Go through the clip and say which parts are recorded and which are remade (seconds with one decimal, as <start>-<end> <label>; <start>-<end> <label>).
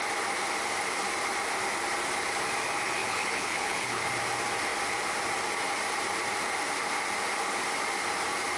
0.0-3.0 recorded; 3.0-4.0 remade; 4.0-8.6 recorded